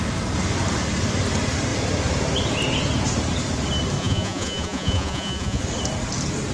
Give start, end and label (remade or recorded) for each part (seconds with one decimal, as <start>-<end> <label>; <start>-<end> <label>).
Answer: 0.0-4.0 recorded; 4.0-5.6 remade; 5.6-6.5 recorded